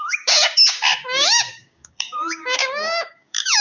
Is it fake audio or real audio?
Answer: fake